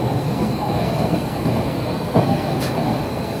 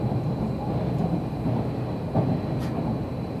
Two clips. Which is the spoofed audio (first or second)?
first